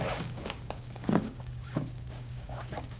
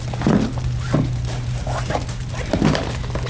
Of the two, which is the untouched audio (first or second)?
second